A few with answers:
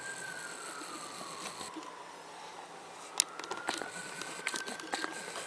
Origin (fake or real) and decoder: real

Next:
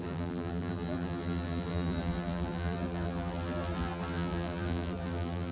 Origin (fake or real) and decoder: fake, vocoder, BigVGAN v2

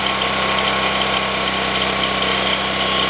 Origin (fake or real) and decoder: real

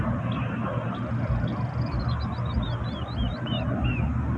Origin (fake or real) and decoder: real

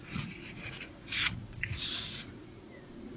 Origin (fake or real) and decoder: fake, vocoder, Vocos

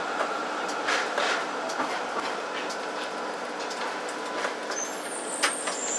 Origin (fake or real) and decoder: real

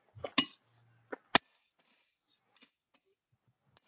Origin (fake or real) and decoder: real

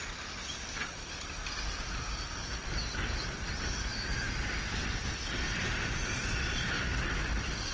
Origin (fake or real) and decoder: real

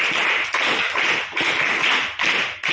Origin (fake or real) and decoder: real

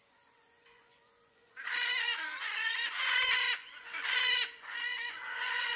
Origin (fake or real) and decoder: fake, vocoder, Vocos